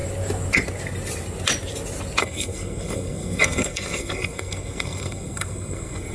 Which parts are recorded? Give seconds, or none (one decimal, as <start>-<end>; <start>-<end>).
0.0-2.2